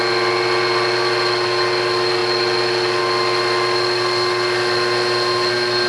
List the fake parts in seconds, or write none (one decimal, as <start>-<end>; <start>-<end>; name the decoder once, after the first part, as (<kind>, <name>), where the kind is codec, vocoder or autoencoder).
none